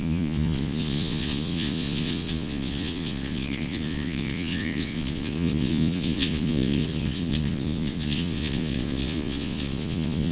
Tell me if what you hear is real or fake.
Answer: fake